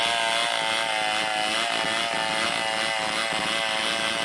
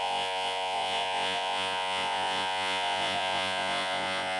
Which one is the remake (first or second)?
second